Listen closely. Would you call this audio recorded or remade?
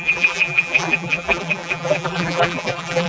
remade